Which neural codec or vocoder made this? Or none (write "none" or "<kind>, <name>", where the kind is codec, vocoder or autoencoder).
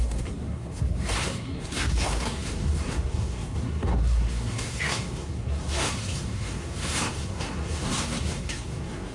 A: codec, SNAC